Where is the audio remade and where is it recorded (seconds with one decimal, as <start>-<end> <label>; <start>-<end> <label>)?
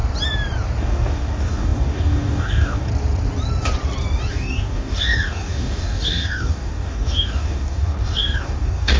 0.0-0.8 recorded; 0.8-2.9 remade; 2.9-4.3 recorded; 4.3-9.0 remade